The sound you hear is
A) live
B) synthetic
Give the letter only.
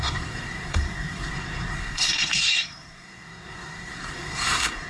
B